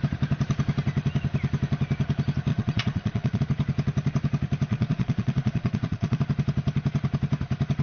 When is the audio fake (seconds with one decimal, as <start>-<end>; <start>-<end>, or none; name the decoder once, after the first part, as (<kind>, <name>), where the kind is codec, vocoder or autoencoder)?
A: 2.5-3.4 (vocoder, Vocos); 4.7-6.2